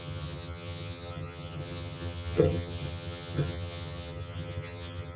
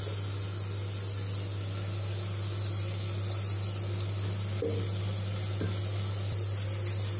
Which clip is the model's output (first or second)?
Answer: first